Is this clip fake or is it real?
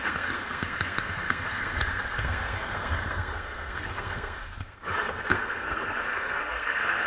fake